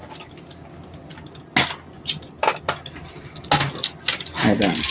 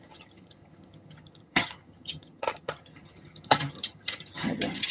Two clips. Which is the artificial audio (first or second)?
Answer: second